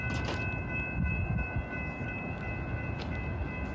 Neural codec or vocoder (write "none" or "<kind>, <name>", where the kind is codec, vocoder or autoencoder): none